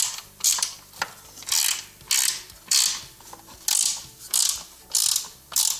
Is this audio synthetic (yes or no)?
no